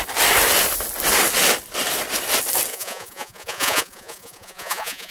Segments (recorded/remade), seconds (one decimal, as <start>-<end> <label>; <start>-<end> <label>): 0.0-2.7 recorded; 2.7-5.1 remade